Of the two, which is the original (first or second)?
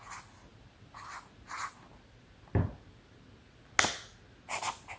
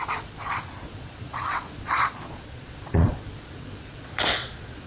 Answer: first